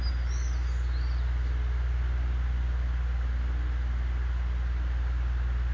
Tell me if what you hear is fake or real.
real